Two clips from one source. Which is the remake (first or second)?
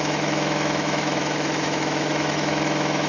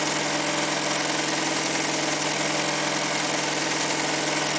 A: first